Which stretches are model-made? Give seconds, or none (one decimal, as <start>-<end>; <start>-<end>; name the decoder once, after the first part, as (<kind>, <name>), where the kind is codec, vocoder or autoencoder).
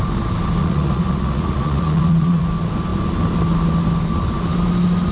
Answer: 0.6-2.4 (vocoder, Vocos)